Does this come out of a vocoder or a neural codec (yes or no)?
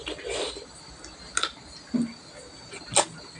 no